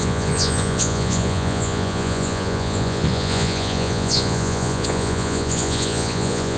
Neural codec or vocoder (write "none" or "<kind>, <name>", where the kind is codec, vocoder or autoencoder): vocoder, Vocos